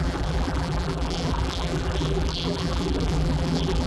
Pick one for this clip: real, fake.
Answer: fake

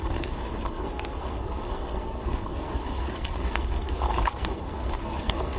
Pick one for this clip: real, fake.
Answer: fake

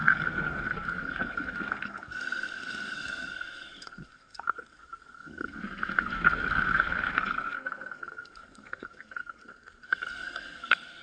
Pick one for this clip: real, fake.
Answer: fake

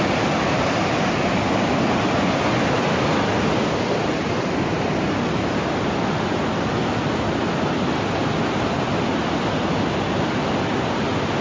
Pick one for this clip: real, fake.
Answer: real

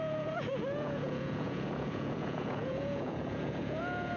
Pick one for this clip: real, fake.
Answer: fake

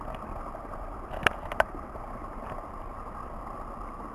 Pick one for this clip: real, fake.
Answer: fake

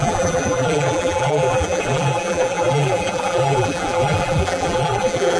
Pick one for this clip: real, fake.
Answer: fake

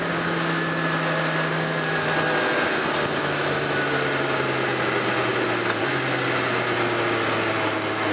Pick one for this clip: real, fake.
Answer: real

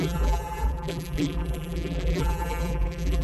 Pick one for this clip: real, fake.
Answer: fake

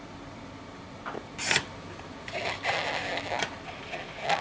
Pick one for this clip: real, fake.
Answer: real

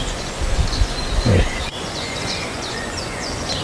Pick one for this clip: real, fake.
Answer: fake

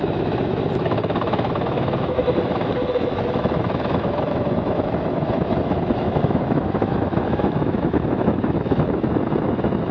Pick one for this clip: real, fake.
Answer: fake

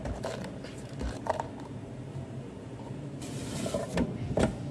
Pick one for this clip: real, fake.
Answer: fake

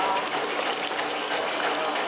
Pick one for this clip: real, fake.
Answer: real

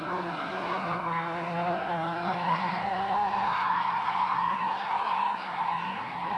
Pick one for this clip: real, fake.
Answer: fake